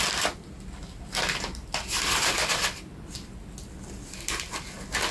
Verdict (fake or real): real